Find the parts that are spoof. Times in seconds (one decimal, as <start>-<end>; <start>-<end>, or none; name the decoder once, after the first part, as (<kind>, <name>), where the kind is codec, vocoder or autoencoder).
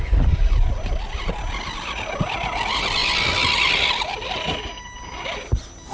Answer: none